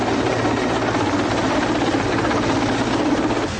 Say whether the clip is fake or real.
real